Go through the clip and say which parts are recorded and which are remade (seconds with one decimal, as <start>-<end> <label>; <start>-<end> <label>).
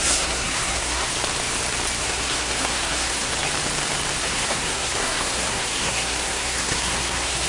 0.0-1.1 remade; 1.1-2.0 recorded; 2.0-3.3 remade; 3.3-4.2 recorded; 4.2-7.5 remade